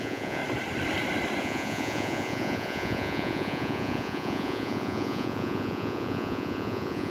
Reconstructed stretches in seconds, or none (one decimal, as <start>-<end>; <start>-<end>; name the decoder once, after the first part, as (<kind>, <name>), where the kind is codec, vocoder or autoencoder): 0.0-0.4 (vocoder, Vocos); 1.4-7.1